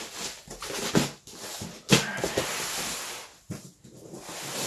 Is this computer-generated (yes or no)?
no